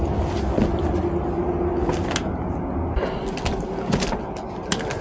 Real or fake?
real